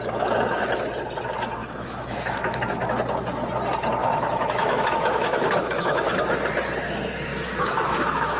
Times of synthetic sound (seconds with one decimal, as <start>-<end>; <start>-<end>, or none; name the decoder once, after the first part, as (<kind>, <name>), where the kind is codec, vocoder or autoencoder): 1.6-2.6 (autoencoder, DAC-VAE); 4.0-6.1; 7.3-8.4